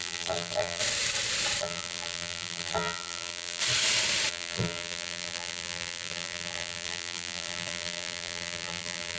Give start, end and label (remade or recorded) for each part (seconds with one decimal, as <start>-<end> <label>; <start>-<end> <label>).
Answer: 0.0-0.8 remade; 0.8-1.6 recorded; 1.6-3.6 remade; 3.6-4.3 recorded; 4.3-9.2 remade